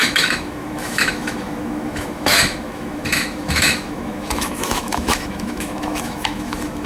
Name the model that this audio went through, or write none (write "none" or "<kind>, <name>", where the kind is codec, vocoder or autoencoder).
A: autoencoder, DAC-VAE